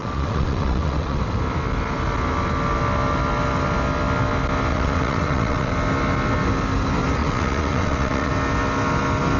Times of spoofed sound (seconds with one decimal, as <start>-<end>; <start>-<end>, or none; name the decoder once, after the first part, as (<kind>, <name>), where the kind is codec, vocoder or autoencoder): 0.0-1.2 (vocoder, WaveNeXt); 4.7-5.7; 7.2-8.3